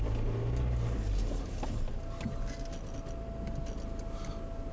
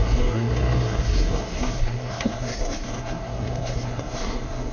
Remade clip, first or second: second